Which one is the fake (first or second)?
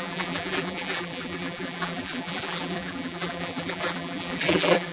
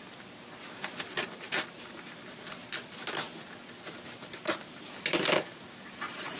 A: first